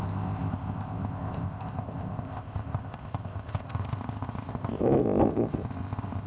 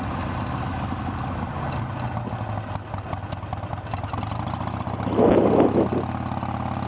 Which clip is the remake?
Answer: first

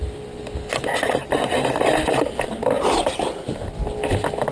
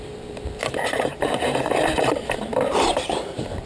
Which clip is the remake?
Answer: second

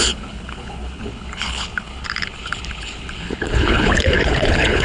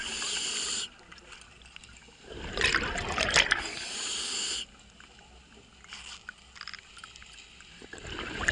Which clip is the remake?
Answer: first